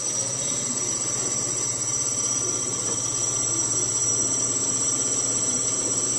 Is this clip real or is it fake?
real